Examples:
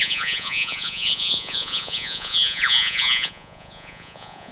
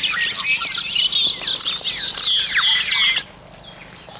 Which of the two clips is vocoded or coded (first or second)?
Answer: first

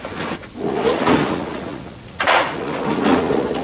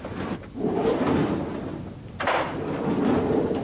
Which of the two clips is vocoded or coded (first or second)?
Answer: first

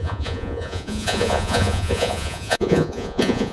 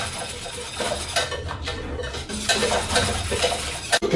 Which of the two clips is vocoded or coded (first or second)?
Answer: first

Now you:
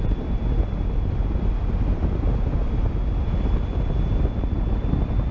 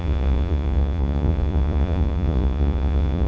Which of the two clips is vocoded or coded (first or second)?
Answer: second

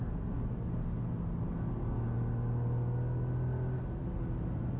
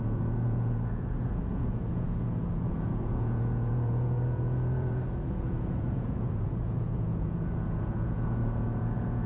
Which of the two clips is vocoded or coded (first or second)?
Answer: second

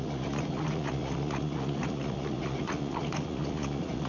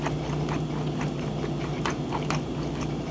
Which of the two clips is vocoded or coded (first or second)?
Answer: first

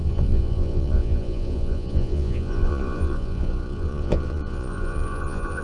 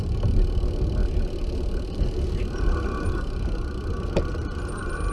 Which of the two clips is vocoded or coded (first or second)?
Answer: first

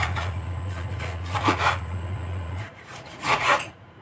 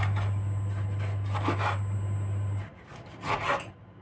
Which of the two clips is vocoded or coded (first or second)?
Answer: first